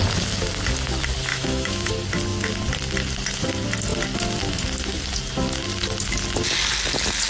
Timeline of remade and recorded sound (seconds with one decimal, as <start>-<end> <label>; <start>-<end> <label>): 0.0-1.3 recorded; 1.3-1.9 remade; 1.9-7.3 recorded